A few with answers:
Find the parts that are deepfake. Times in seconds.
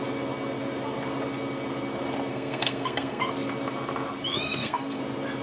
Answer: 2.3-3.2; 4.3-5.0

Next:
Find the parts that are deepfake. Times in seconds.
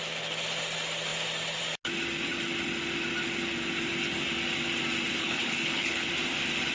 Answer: 5.2-6.1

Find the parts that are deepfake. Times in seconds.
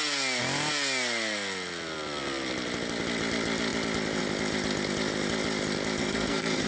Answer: 6.0-6.7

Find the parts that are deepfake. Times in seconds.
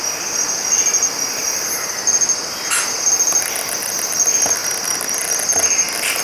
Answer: none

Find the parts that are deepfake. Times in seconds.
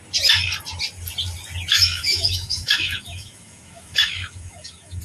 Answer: 1.7-5.0